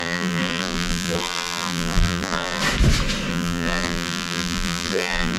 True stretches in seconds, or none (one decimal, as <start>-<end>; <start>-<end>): 2.6-3.3